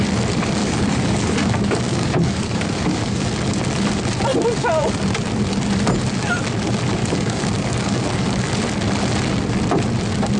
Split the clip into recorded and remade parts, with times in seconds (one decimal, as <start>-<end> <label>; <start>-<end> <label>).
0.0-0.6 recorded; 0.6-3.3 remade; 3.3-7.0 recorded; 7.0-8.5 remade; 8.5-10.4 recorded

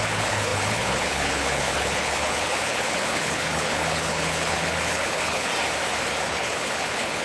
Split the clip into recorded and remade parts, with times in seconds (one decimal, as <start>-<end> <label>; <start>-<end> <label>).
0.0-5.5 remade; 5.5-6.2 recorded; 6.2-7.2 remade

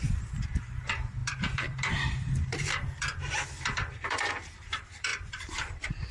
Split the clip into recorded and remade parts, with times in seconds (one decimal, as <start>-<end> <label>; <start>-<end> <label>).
0.0-6.1 remade